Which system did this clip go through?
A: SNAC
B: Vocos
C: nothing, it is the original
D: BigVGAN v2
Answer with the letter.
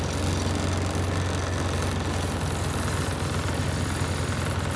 C